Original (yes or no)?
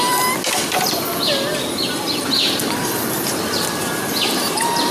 yes